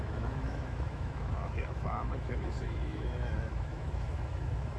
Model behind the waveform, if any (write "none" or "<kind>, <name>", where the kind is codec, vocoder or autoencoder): autoencoder, DAC-VAE